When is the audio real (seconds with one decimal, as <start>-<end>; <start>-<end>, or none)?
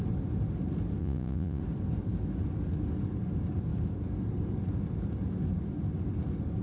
0.0-1.0; 1.6-6.6